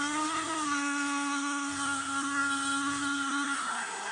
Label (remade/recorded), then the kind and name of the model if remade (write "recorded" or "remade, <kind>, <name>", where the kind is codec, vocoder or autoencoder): remade, codec, SNAC